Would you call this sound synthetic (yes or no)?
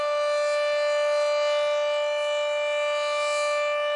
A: no